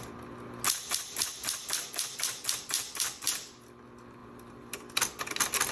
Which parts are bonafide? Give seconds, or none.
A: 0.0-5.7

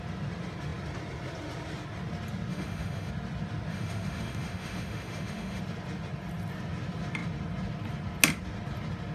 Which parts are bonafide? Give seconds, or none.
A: 0.0-2.5; 3.1-3.7; 5.6-9.1

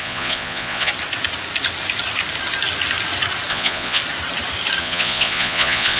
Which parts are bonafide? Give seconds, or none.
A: 0.9-3.5; 4.0-4.8

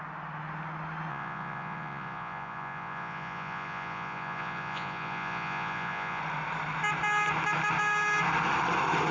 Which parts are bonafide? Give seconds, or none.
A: 0.0-1.1; 6.2-9.1